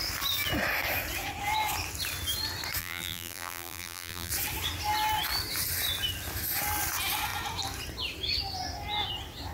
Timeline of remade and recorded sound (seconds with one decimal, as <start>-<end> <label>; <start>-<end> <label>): 0.0-2.8 recorded; 2.8-4.3 remade; 4.3-9.5 recorded